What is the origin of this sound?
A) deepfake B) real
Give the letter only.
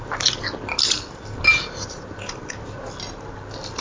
B